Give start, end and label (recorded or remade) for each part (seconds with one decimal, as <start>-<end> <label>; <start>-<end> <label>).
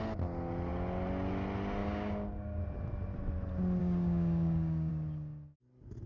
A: 0.0-1.8 recorded; 1.8-2.6 remade; 2.6-3.8 recorded; 3.8-4.9 remade; 4.9-6.1 recorded